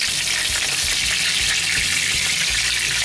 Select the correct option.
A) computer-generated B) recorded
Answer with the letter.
A